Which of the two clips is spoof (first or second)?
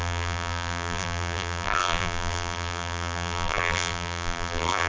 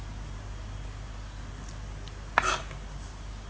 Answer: first